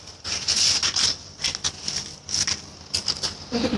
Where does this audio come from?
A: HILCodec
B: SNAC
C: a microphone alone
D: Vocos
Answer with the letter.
C